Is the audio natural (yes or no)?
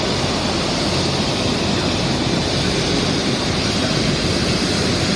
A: yes